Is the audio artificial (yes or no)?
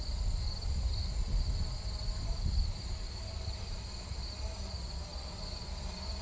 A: no